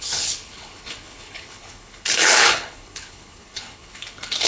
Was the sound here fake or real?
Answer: fake